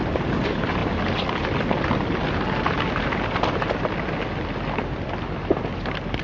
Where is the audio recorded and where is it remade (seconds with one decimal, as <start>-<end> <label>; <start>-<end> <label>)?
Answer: 0.0-6.2 recorded